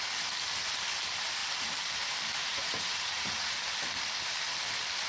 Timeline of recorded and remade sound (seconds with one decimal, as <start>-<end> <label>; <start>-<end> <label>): 0.0-2.4 recorded; 2.4-3.5 remade; 3.5-5.1 recorded